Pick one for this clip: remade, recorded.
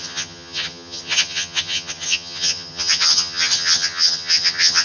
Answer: remade